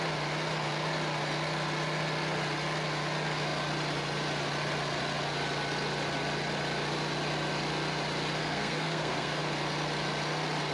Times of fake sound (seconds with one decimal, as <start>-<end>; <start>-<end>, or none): 8.4-9.4